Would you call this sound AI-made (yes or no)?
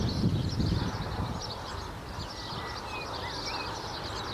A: no